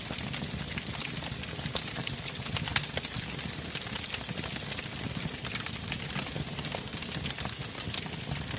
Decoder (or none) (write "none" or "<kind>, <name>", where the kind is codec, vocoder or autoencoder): none